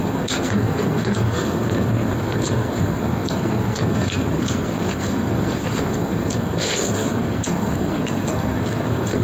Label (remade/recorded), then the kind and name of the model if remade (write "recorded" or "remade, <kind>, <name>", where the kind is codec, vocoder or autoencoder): remade, codec, SNAC